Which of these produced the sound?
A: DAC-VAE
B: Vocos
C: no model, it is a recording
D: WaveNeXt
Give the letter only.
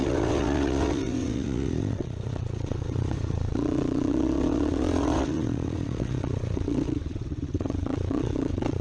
D